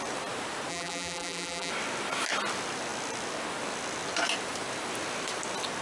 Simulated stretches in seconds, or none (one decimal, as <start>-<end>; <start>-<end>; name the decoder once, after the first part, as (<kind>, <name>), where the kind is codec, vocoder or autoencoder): 0.7-1.7 (vocoder, BigVGAN v2)